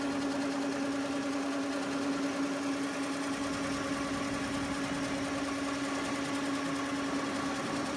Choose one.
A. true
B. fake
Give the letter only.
A